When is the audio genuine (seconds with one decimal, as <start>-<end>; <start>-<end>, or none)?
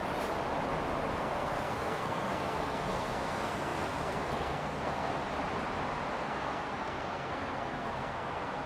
0.0-1.1; 5.2-6.2